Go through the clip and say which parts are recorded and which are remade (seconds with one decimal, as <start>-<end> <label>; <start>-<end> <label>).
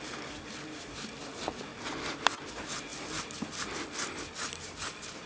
0.0-1.7 recorded; 1.7-2.5 remade; 2.5-5.3 recorded